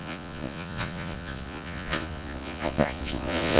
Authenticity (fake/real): fake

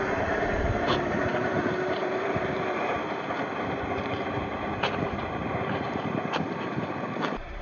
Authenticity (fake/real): fake